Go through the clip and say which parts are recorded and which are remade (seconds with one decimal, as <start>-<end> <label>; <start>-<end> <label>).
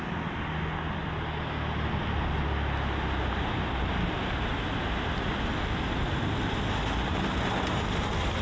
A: 0.0-8.4 recorded